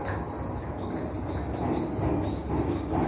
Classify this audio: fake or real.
real